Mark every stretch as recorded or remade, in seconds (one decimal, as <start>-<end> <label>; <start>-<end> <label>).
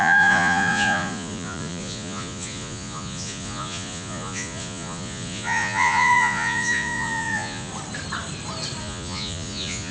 0.0-7.7 remade; 7.7-8.8 recorded; 8.8-9.9 remade